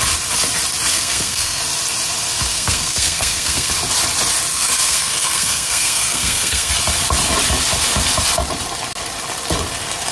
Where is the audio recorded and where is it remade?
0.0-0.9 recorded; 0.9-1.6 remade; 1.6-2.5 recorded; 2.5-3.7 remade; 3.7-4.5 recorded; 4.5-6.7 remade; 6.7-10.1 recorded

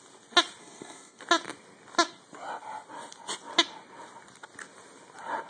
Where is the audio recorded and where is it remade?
0.0-0.6 recorded; 0.6-1.2 remade; 1.2-5.5 recorded

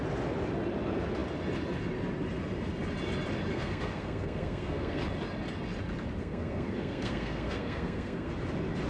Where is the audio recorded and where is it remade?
0.0-3.5 recorded; 3.5-5.0 remade; 5.0-6.2 recorded; 6.2-8.3 remade; 8.3-8.9 recorded

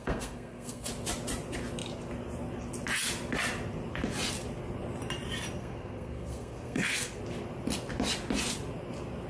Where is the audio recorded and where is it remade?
0.0-0.9 remade; 0.9-5.6 recorded; 5.6-7.2 remade; 7.2-9.3 recorded

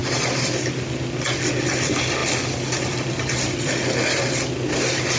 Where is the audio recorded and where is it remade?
0.0-5.2 recorded